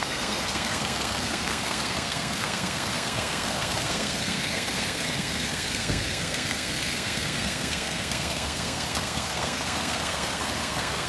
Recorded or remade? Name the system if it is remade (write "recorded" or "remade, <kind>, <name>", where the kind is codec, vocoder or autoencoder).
remade, codec, SNAC